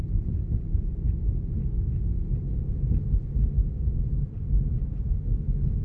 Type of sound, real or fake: real